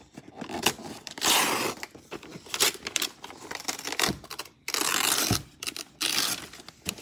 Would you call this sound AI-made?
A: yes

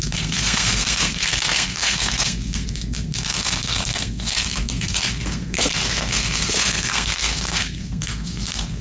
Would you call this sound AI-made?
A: yes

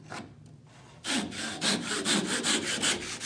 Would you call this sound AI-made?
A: no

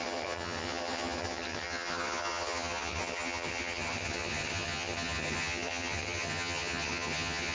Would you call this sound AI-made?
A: yes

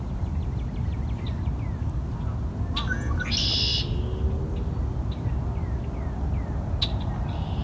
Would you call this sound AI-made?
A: no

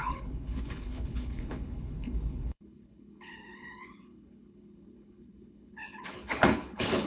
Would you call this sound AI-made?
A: yes